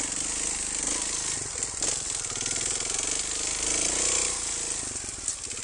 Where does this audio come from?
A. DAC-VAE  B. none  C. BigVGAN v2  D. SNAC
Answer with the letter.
B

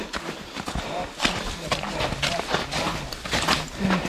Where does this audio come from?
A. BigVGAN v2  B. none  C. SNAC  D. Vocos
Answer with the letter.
B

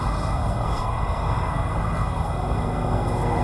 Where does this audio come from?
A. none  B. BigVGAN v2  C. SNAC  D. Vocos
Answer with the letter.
C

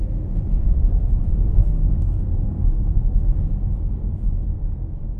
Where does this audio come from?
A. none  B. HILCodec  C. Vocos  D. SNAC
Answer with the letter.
D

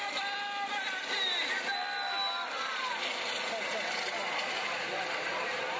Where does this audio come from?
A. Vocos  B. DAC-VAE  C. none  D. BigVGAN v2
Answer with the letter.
C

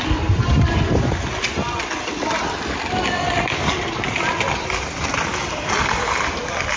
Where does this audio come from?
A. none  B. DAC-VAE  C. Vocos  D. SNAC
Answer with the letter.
A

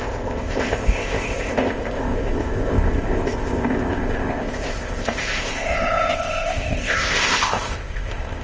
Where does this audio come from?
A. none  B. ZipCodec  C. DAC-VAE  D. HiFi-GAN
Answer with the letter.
B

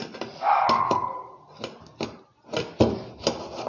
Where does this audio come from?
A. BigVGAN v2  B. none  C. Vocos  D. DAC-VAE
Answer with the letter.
B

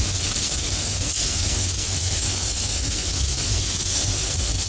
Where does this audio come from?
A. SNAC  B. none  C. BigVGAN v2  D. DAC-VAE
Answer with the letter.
A